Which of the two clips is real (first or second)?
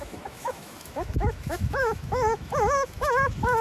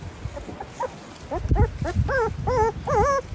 second